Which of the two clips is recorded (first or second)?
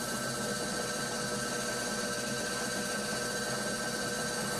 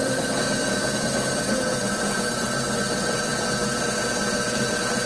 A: first